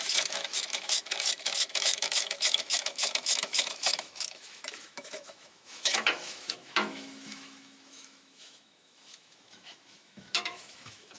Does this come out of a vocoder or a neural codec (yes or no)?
yes